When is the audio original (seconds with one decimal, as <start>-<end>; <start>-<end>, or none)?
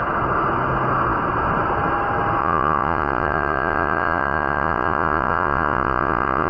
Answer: 0.0-2.4